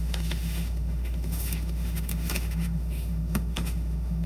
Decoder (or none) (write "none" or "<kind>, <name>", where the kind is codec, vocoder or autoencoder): autoencoder, DAC-VAE